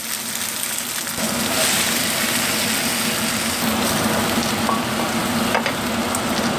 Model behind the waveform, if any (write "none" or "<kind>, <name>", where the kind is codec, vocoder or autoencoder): none